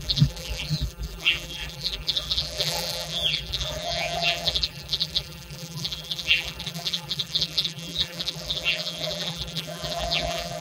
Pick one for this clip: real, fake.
fake